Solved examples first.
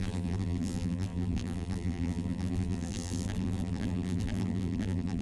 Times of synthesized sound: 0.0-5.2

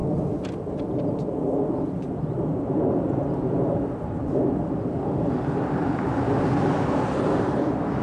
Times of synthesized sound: 2.1-2.8; 7.6-8.0

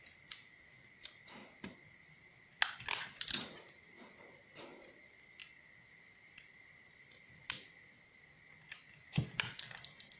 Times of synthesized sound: none

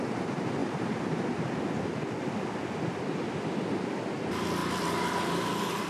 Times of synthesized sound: 0.6-1.2; 4.6-5.3

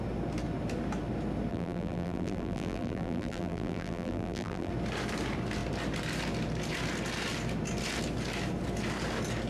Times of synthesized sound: 1.5-4.7

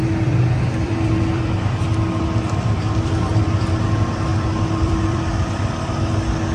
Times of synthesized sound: 0.0-3.8; 4.3-5.9

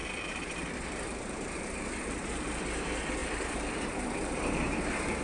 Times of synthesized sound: 0.0-2.6; 3.2-5.2

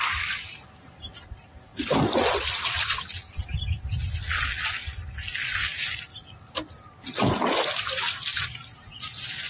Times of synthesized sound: 8.3-8.8